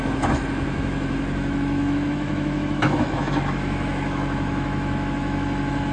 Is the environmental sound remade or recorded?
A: remade